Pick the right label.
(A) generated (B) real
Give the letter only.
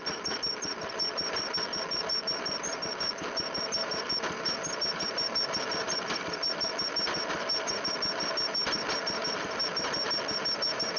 A